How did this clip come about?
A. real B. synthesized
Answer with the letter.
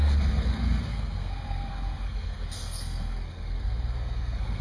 B